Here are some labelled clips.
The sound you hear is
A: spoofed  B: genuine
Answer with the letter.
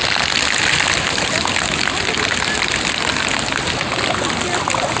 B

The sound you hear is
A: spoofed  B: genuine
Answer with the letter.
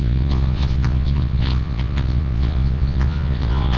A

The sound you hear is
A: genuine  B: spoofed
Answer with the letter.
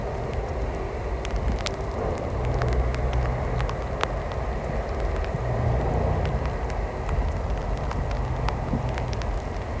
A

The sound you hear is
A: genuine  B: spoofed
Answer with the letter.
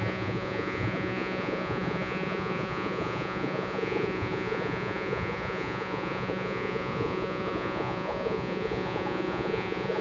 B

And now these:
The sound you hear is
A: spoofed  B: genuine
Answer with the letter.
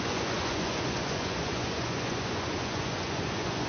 A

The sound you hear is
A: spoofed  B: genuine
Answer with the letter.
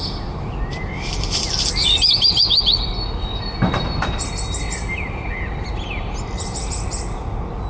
B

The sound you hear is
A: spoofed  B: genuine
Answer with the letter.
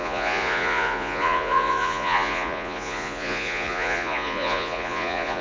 A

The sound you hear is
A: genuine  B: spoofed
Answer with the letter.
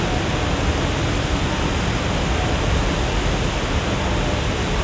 A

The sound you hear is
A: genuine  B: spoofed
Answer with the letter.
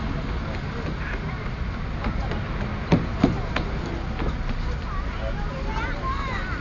A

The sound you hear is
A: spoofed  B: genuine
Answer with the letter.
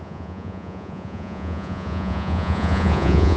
A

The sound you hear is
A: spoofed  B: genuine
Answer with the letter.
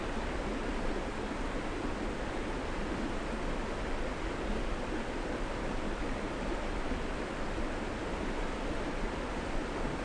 B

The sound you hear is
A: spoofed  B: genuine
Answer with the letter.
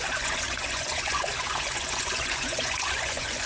A